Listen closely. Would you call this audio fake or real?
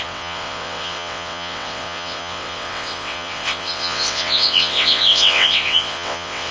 fake